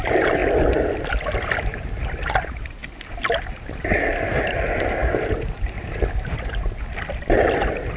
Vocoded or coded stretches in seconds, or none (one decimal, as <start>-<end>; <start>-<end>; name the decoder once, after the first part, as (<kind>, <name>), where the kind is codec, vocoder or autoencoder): 0.0-0.4 (vocoder, BigVGAN v2); 2.4-2.8; 4.4-5.0

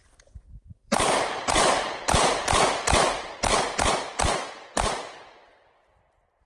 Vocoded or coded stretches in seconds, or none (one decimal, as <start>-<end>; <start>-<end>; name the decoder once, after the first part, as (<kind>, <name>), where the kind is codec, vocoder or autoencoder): 0.0-3.9 (vocoder, BigVGAN v2)

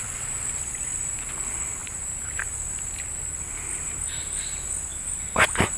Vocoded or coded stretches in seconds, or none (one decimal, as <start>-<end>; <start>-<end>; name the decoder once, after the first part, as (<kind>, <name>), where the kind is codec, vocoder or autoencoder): 1.8-2.4 (vocoder, BigVGAN v2)

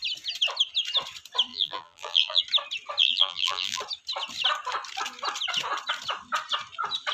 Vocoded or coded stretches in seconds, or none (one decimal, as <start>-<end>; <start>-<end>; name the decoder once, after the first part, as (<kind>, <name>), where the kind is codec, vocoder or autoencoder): 1.5-2.4 (vocoder, BigVGAN v2); 3.0-3.8

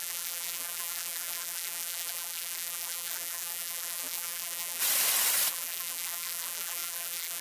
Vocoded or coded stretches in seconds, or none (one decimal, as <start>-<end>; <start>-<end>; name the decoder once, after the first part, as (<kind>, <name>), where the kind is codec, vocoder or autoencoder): 0.0-4.8 (vocoder, BigVGAN v2); 5.5-7.4

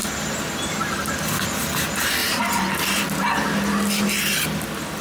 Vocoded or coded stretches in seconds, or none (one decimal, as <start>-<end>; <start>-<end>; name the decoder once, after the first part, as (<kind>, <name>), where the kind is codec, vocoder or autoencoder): none

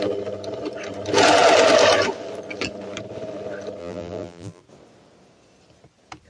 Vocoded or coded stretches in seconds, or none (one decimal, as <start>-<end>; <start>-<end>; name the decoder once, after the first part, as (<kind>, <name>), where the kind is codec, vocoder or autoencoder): 3.8-4.6 (vocoder, BigVGAN v2)

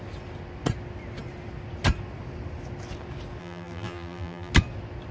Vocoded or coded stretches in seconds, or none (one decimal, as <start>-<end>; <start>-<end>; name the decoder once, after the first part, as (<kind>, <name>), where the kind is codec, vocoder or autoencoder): 3.4-4.5 (vocoder, BigVGAN v2)